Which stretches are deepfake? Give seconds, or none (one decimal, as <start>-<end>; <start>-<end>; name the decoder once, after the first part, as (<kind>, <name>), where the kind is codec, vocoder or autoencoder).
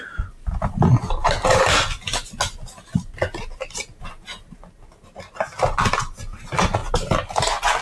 none